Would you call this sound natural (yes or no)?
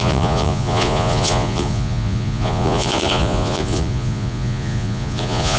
no